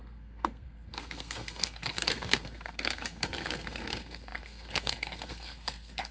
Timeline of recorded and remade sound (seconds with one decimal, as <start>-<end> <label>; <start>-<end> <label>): 0.0-6.1 remade